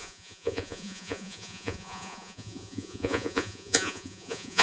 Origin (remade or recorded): remade